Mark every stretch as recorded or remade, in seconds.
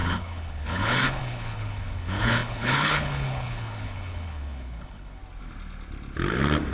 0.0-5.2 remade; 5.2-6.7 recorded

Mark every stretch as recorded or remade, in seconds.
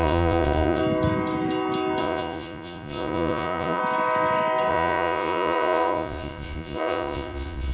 0.0-0.8 remade; 0.8-2.0 recorded; 2.0-3.8 remade; 3.8-4.7 recorded; 4.7-7.7 remade